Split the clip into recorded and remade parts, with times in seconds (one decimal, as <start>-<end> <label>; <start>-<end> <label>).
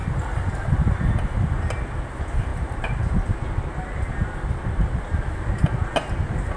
0.0-1.6 remade; 1.6-6.6 recorded